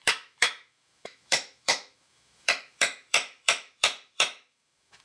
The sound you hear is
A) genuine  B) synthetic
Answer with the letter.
B